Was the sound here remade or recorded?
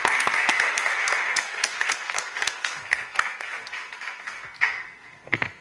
remade